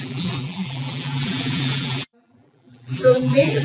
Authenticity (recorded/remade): remade